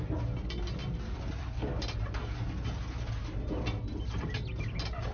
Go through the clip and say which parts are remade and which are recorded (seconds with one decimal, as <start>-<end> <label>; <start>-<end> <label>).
0.0-5.1 recorded